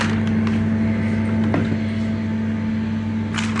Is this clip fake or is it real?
real